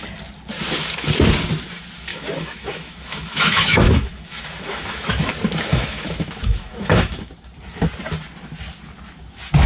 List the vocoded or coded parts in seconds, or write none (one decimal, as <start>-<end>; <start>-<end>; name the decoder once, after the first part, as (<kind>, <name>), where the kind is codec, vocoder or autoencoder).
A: 2.1-5.3 (autoencoder, DAC-VAE); 5.7-7.3